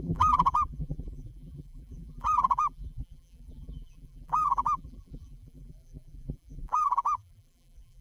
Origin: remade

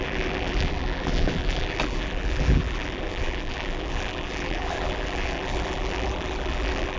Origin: remade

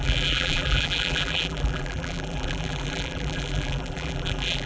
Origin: remade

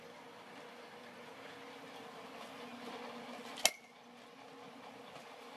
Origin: recorded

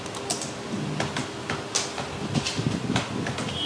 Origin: recorded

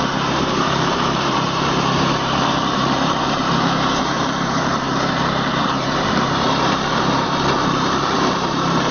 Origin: remade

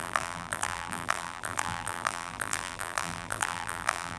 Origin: remade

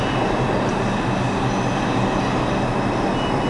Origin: recorded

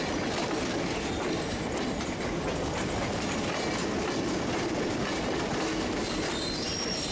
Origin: remade